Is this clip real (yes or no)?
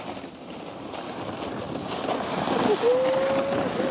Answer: yes